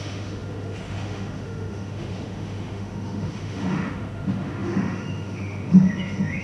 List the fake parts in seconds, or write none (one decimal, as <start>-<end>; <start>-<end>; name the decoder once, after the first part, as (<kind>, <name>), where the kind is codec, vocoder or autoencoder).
0.0-6.4 (autoencoder, DAC-VAE)